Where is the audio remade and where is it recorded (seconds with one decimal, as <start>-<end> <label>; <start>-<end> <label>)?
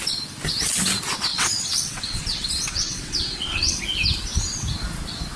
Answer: 0.0-1.3 recorded; 1.3-3.8 remade; 3.8-5.4 recorded